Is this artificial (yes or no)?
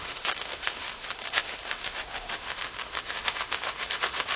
yes